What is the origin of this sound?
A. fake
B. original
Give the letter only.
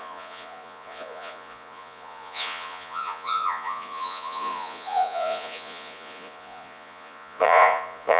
A